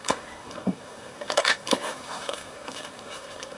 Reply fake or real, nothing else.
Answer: fake